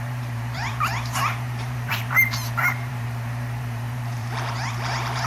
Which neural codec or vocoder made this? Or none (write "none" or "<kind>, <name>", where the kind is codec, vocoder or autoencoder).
vocoder, BigVGAN v2